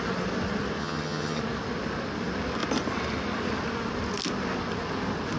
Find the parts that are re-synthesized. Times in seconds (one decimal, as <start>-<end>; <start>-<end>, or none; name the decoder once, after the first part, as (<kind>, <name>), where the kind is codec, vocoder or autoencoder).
0.8-1.4 (vocoder, HiFi-GAN)